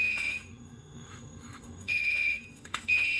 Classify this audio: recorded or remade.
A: remade